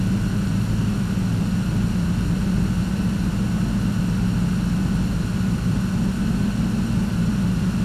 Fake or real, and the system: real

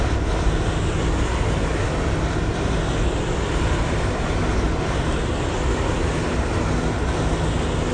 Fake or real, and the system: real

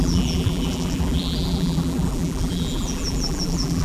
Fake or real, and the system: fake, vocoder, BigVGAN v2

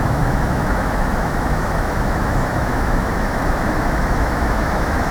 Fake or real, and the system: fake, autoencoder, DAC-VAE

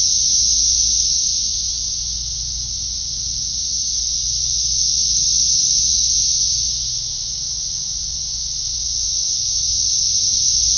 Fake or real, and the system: fake, autoencoder, DAC-VAE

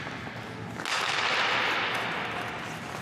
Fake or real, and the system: real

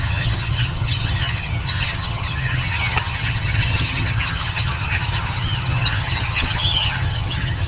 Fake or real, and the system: fake, vocoder, HiFi-GAN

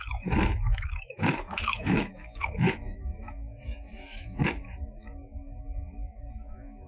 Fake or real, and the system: fake, autoencoder, DAC-VAE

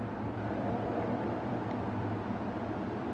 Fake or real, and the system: fake, vocoder, BigVGAN v2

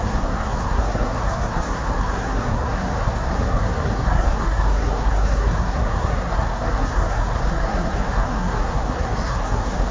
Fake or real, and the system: fake, codec, SNAC